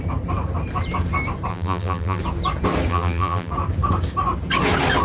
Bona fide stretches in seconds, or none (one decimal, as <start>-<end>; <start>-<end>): 0.0-1.5; 2.2-2.9; 3.5-5.0